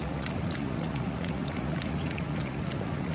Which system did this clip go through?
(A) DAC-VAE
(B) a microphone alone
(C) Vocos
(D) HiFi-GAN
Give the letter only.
C